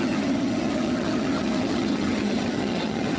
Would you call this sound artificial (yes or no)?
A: yes